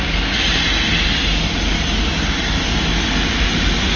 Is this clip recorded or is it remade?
recorded